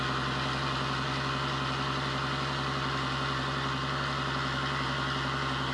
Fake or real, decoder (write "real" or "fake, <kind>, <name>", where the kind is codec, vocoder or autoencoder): real